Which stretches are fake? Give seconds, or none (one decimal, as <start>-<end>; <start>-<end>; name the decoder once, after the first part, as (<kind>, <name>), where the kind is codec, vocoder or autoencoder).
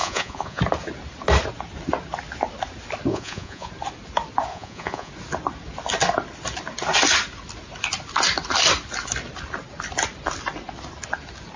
0.0-0.6 (vocoder, Vocos); 3.1-3.7; 4.5-5.1